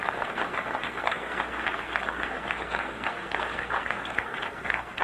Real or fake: fake